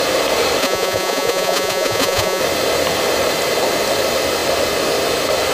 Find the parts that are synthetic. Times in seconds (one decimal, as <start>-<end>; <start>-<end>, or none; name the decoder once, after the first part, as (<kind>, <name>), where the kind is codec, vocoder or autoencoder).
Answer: 0.6-2.4 (vocoder, Vocos)